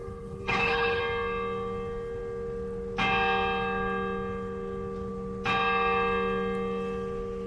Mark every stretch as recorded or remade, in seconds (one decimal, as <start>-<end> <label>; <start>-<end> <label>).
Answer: 0.0-1.0 remade; 1.0-7.5 recorded